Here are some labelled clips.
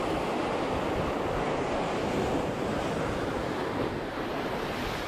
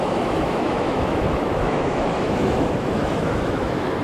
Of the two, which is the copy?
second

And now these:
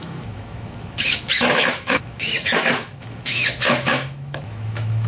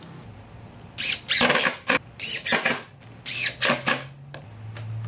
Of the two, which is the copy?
first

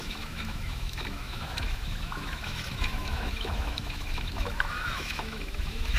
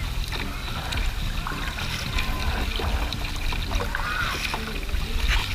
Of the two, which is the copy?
first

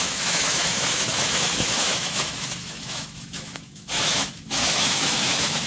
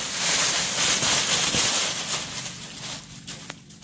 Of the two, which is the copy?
first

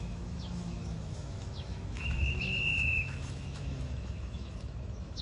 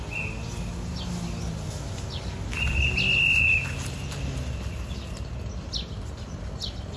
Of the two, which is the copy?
first